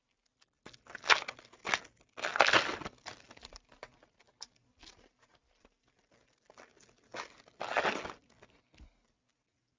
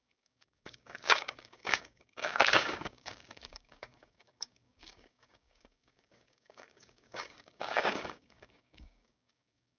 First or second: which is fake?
second